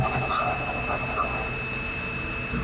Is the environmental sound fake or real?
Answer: real